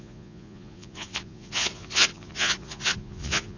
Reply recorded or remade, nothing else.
remade